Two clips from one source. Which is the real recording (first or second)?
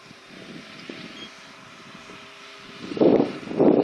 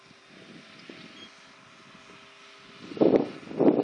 second